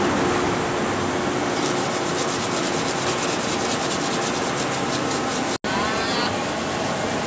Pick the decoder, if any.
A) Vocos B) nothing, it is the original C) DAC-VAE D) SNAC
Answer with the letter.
B